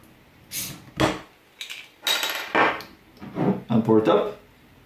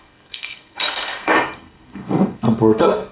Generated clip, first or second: second